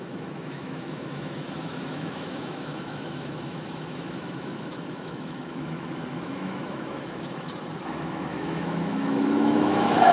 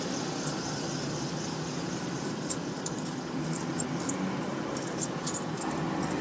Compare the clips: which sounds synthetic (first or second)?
first